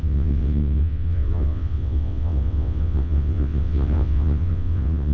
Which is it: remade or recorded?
remade